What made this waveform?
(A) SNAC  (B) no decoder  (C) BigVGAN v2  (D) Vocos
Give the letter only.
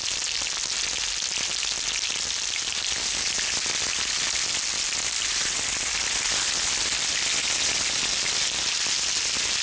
B